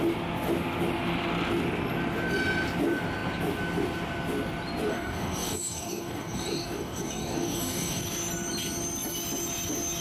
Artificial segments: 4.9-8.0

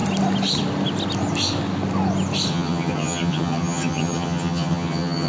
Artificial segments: 2.5-5.3

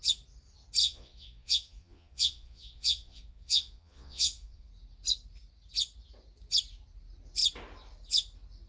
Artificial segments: 0.8-4.7